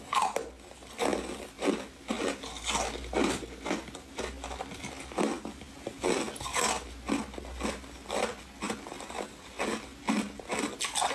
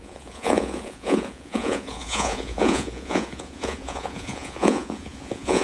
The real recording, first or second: first